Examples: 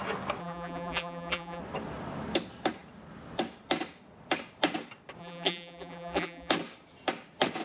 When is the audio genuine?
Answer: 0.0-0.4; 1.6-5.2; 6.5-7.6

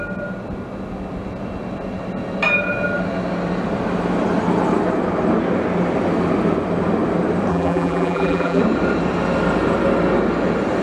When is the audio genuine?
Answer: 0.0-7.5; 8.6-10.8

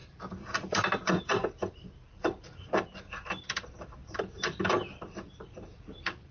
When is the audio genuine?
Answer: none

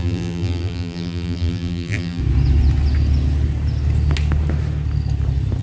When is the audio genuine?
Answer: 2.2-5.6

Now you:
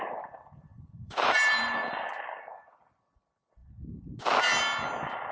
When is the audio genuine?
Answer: 0.0-0.7; 1.8-5.3

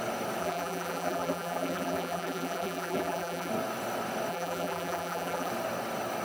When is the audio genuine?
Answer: 0.0-0.4; 3.5-4.3; 5.5-6.2